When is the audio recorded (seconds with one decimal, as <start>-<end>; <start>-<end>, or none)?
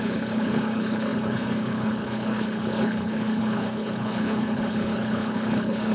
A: none